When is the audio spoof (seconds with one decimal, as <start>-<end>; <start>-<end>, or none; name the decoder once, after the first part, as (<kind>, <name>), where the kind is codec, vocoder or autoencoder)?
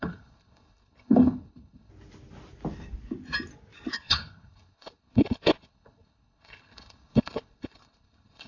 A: 0.0-1.9 (codec, HILCodec); 3.9-8.5